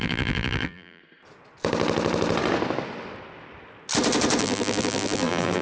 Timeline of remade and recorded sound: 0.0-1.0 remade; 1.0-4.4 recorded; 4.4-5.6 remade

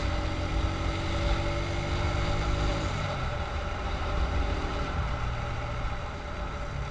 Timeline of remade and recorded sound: 0.0-2.7 recorded; 2.7-5.1 remade; 5.1-6.9 recorded

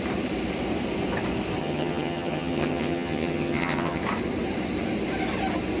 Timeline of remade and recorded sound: 0.0-1.6 recorded; 1.6-4.0 remade; 4.0-5.8 recorded

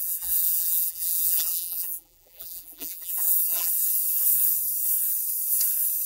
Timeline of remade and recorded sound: 0.0-3.7 remade; 3.7-6.1 recorded

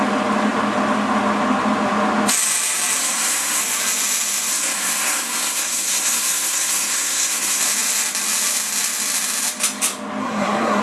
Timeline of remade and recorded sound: 0.0-3.0 recorded; 3.0-3.6 remade; 3.6-4.5 recorded; 4.5-7.6 remade; 7.6-10.2 recorded; 10.2-10.8 remade

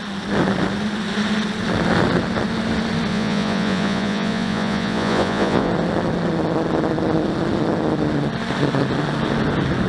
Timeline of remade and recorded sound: 0.0-3.1 recorded; 3.1-5.7 remade; 5.7-9.9 recorded

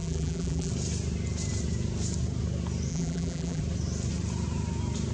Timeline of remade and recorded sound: 0.0-0.7 remade; 0.7-2.9 recorded; 2.9-3.6 remade; 3.6-5.1 recorded